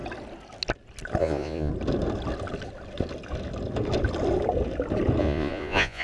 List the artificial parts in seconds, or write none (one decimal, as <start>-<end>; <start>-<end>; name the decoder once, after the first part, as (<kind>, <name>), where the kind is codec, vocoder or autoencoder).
1.2-1.7 (vocoder, Vocos); 5.2-6.0